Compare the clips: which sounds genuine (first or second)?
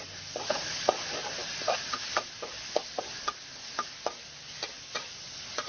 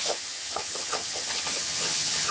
first